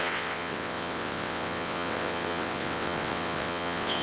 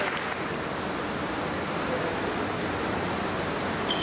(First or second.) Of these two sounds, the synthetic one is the first